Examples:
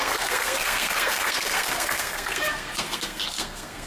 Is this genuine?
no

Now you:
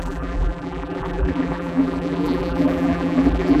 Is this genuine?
no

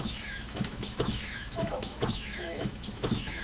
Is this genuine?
no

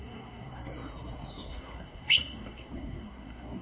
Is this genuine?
no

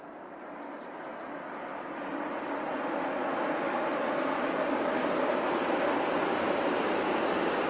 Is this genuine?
yes